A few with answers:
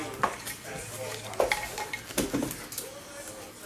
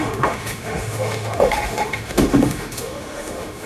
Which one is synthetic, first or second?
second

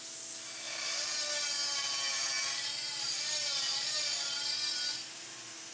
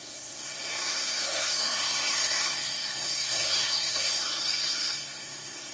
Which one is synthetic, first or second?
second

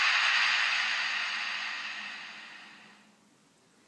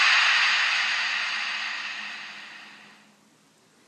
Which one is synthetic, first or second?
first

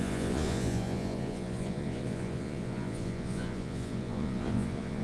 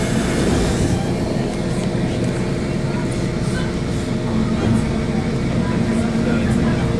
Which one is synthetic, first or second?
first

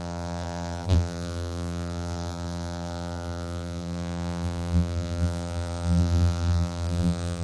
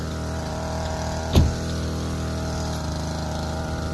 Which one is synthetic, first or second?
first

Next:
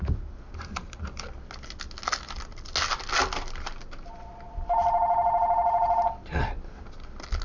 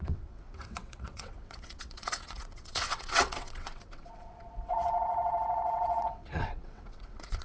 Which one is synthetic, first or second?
second